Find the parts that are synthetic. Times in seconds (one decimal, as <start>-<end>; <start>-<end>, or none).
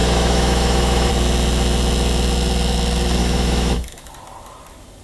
0.0-1.1; 3.2-4.1